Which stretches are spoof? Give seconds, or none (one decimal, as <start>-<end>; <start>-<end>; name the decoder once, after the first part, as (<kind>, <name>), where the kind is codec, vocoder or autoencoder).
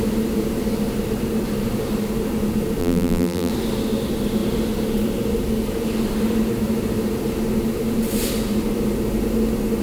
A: 2.8-3.5 (vocoder, BigVGAN v2)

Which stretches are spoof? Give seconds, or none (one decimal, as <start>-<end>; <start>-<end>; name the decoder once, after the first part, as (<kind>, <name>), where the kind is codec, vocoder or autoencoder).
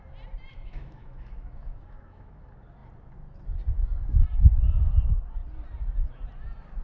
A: 0.5-2.4 (autoencoder, DAC-VAE)